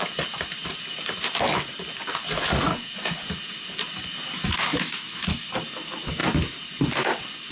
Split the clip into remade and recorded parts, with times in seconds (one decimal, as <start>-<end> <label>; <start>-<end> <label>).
0.0-4.7 recorded; 4.7-5.5 remade; 5.5-7.5 recorded